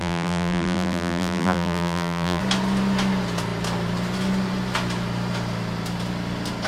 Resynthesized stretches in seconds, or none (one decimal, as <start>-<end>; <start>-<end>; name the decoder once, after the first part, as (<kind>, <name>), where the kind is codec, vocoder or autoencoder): 0.0-2.4 (vocoder, BigVGAN v2)